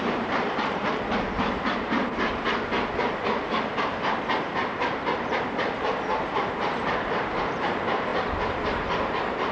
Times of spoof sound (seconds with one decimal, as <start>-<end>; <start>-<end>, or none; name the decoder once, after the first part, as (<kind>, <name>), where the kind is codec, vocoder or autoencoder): 0.0-2.0 (vocoder, BigVGAN v2); 4.8-9.5